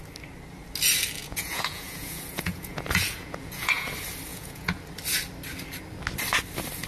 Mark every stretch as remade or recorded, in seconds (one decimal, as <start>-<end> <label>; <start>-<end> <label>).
0.0-1.2 recorded; 1.2-3.9 remade; 3.9-4.3 recorded; 4.3-4.8 remade; 4.8-6.9 recorded